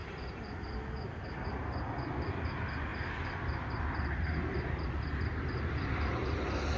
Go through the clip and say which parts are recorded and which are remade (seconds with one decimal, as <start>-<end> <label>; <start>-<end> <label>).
0.0-6.8 recorded